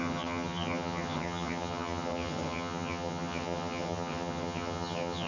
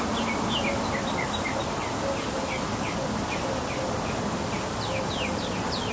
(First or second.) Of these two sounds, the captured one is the second